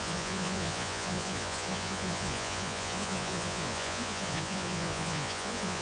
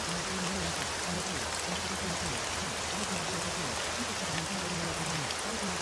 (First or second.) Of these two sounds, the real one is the second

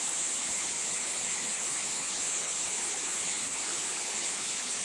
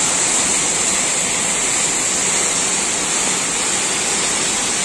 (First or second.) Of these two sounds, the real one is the second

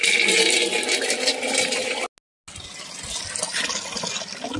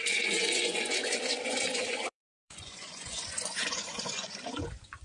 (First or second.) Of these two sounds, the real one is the first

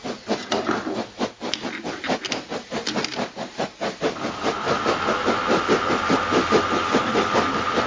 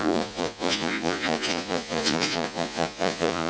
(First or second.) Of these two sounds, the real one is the first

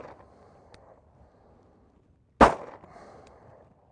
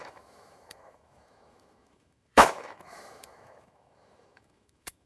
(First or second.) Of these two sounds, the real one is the first